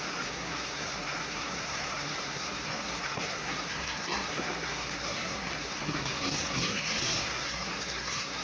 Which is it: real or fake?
fake